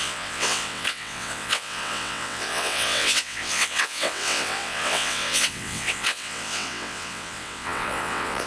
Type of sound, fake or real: fake